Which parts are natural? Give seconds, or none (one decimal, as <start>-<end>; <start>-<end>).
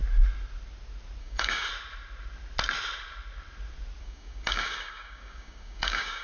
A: 0.0-1.2; 1.7-4.0